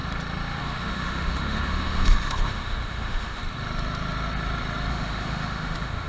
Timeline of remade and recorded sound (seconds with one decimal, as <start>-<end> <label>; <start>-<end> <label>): 0.0-0.6 recorded; 0.6-3.4 remade; 3.4-4.9 recorded; 4.9-6.1 remade